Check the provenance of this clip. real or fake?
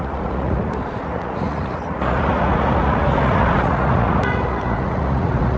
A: fake